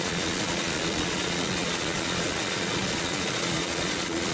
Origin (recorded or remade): remade